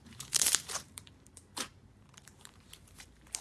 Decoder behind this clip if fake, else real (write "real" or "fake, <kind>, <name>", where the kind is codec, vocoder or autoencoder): fake, vocoder, BigVGAN v2